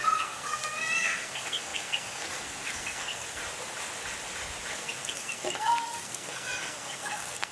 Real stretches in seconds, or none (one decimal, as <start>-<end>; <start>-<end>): 3.4-4.7